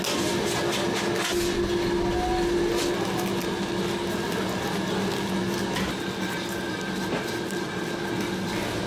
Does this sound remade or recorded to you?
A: recorded